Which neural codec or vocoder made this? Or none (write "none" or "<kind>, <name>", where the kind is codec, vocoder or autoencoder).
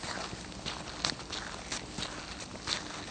none